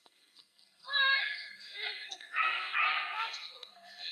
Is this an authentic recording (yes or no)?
no